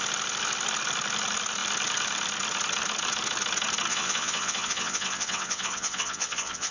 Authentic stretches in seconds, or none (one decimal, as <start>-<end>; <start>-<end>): 0.0-3.9